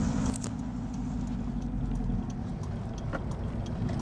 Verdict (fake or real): real